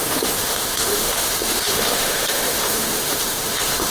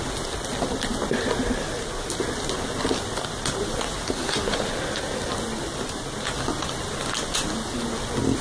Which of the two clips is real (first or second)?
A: second